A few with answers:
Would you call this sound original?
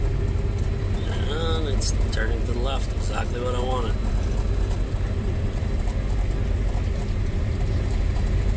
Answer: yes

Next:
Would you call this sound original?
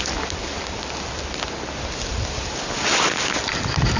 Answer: yes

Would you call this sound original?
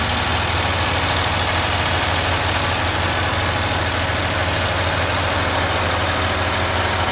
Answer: yes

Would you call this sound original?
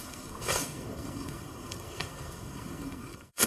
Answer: no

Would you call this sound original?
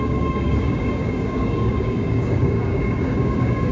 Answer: no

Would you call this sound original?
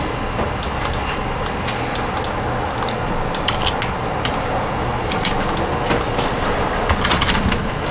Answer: yes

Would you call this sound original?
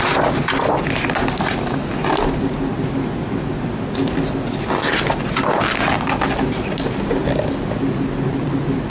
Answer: yes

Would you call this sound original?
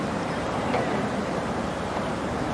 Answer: no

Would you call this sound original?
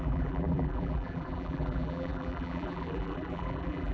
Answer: no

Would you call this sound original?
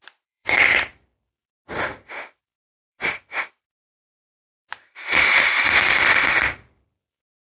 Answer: no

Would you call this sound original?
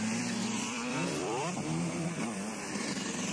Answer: no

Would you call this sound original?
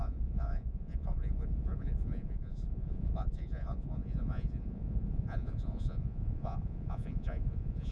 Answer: no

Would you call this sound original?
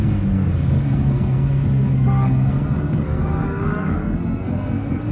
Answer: no